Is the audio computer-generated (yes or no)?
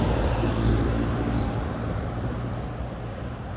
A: no